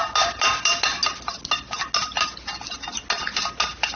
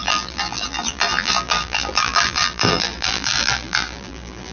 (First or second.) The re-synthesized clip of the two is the second